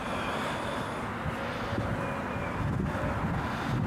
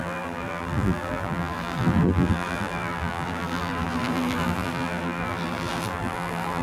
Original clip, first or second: first